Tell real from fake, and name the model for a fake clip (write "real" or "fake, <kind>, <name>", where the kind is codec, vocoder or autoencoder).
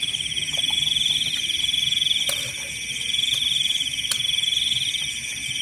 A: real